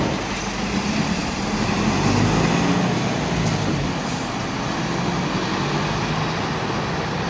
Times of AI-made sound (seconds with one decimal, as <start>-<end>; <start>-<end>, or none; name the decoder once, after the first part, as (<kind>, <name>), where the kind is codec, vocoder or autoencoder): none